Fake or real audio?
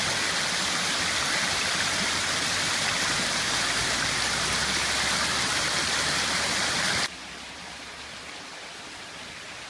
real